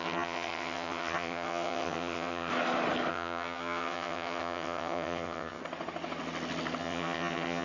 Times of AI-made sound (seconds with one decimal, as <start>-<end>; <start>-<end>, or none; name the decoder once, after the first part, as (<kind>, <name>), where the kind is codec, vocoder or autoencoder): 0.0-2.5 (vocoder, HiFi-GAN); 3.1-5.6; 6.8-7.6